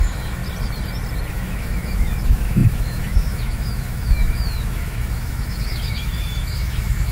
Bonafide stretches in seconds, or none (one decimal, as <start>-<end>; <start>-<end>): 0.4-1.3